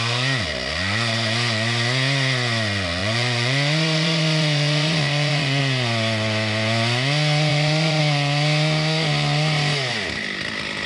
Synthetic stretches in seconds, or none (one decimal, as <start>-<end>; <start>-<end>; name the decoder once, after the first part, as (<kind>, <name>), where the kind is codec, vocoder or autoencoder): 3.0-5.6 (vocoder, Vocos); 7.5-8.0